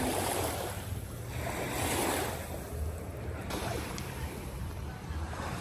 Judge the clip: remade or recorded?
recorded